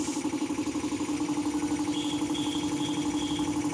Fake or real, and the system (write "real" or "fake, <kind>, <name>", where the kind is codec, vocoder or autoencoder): real